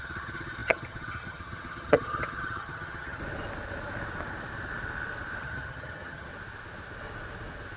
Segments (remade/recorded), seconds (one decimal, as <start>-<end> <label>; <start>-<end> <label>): 0.0-3.2 remade; 3.2-5.4 recorded; 5.4-6.3 remade; 6.3-7.8 recorded